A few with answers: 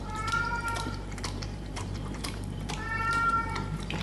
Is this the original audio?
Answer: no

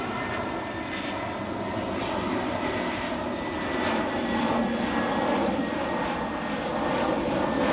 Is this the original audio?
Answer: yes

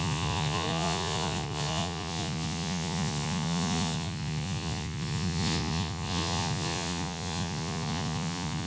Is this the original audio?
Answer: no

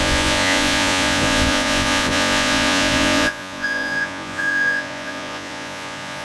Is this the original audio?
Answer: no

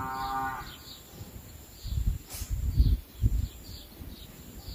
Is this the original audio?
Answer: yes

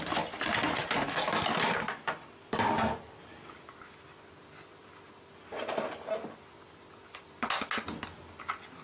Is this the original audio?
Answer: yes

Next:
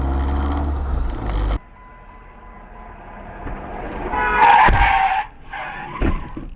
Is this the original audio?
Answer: yes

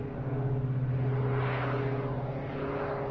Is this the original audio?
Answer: yes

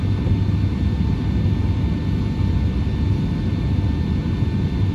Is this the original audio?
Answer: yes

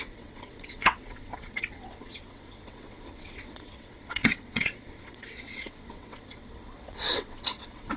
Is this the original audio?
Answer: no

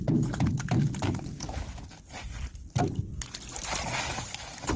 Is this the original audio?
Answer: yes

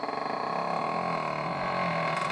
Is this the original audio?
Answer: yes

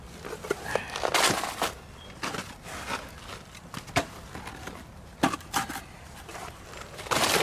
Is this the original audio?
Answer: yes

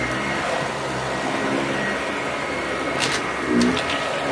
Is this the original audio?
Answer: yes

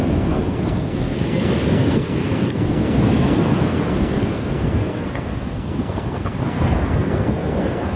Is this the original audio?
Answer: no